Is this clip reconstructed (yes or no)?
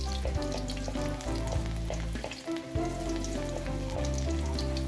no